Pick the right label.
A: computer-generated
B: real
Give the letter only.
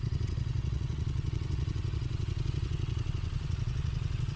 A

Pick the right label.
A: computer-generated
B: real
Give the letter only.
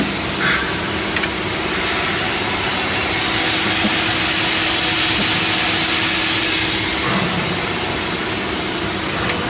B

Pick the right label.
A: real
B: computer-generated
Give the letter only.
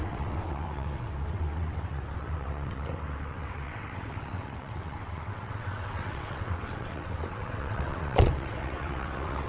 B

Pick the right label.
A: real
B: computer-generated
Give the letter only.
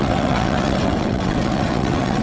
B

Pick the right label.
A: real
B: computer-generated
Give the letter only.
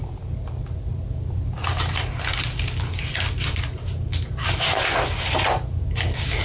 A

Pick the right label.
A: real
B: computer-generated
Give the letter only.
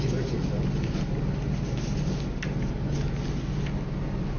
A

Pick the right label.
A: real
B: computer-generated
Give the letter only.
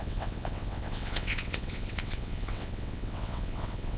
B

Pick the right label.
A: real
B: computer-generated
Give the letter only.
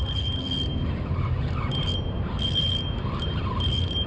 A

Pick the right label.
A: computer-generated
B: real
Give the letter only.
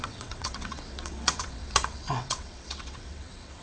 A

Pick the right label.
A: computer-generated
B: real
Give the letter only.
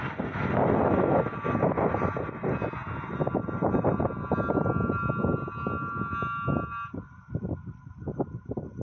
B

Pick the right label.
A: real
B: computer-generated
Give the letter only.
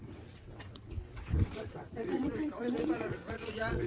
B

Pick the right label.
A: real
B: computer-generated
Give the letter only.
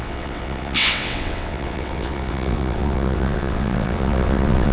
B